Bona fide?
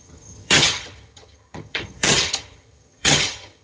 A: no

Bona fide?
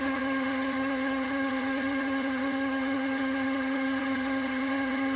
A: no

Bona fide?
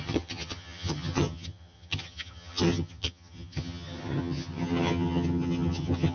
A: no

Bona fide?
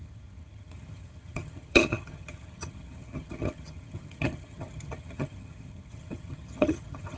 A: no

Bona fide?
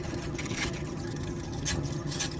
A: no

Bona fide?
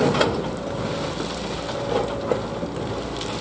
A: yes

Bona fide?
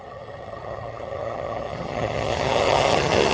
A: no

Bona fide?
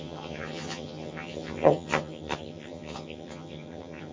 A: no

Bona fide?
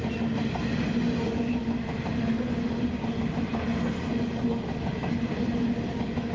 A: yes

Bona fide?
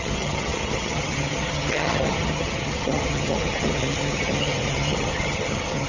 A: no